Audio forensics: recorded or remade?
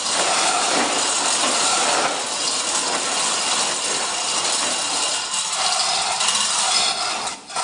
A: recorded